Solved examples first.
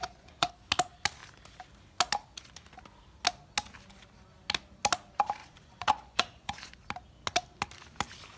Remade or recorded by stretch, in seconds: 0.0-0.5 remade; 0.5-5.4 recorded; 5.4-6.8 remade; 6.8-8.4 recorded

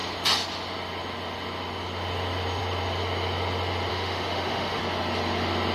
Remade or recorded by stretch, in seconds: 0.0-3.9 recorded; 3.9-4.8 remade; 4.8-5.7 recorded

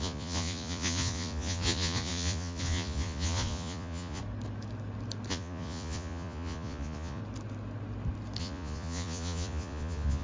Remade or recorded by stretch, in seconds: 0.0-4.2 remade; 4.2-5.3 recorded; 5.3-7.2 remade; 7.2-8.4 recorded; 8.4-10.2 remade

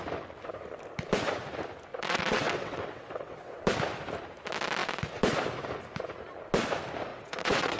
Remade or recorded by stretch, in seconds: 0.0-1.9 recorded; 1.9-3.6 remade; 3.6-7.1 recorded; 7.1-7.8 remade

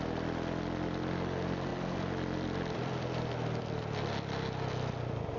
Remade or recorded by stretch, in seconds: 0.0-1.7 recorded; 1.7-3.8 remade; 3.8-5.4 recorded

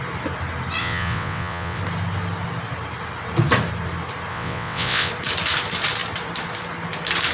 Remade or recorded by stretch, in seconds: 0.0-0.8 recorded; 0.8-1.8 remade; 1.8-4.3 recorded; 4.3-5.1 remade; 5.1-7.3 recorded

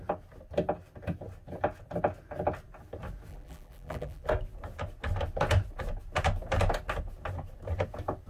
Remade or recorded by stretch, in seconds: 0.0-3.3 recorded; 3.3-4.3 remade; 4.3-8.3 recorded